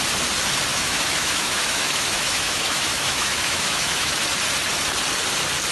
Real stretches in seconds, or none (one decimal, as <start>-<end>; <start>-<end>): 0.0-0.7; 4.1-5.7